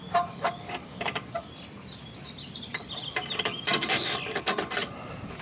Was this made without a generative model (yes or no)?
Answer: no